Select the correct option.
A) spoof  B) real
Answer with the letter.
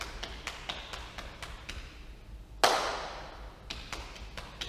B